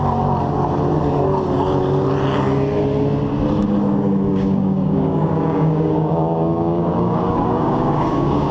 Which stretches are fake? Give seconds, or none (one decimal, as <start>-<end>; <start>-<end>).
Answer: 4.3-8.5